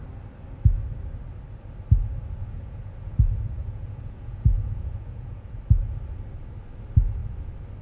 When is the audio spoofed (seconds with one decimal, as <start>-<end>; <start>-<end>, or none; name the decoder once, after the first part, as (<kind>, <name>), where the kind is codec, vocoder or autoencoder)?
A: 2.4-5.6 (vocoder, Vocos)

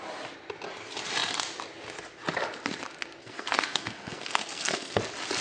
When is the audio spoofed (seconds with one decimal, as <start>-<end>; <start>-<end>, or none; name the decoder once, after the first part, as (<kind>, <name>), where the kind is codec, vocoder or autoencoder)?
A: 3.2-5.0 (codec, SNAC)

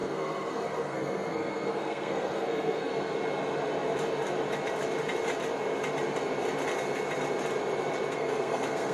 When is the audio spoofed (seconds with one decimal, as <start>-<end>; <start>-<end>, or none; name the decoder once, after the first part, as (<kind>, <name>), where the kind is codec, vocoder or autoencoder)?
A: 0.0-2.9 (codec, SNAC); 8.1-8.9

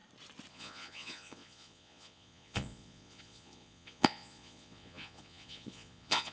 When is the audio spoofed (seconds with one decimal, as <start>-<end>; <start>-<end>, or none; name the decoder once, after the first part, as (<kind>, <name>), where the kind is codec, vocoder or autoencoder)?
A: 0.5-6.3 (vocoder, Vocos)